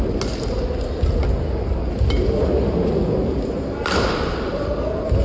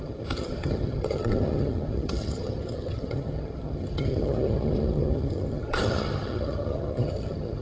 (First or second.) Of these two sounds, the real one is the first